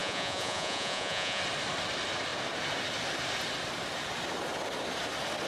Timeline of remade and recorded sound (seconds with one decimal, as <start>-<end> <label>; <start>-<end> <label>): 0.0-1.4 remade; 1.4-5.5 recorded